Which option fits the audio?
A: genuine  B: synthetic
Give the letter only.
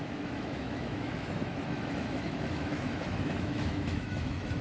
B